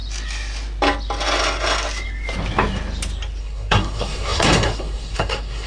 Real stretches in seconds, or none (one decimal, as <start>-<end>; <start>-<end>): 0.0-3.4